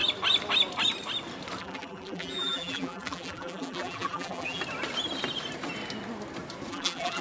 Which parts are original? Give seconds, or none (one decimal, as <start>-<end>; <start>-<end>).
0.0-1.6; 4.6-6.7